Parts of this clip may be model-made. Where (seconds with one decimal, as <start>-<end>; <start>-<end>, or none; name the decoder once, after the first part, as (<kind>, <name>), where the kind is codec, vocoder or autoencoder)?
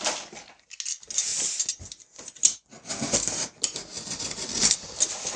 none